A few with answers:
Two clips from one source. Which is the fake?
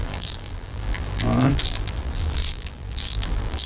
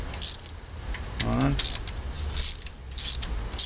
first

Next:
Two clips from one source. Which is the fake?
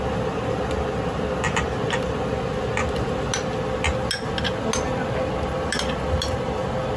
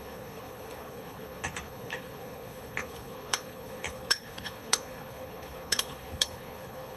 second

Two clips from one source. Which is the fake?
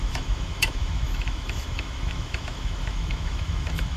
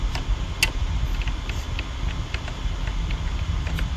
first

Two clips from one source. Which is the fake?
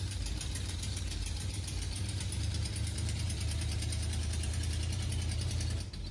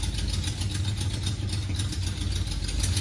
first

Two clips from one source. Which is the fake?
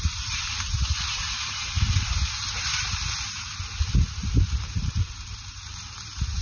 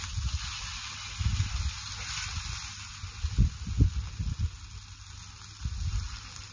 first